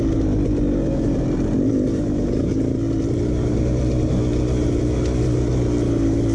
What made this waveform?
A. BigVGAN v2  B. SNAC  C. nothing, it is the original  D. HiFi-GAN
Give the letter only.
C